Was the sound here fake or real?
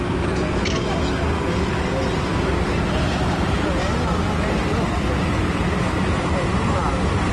real